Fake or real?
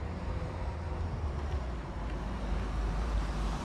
fake